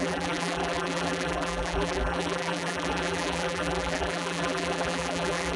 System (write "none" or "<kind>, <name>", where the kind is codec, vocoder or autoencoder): vocoder, BigVGAN v2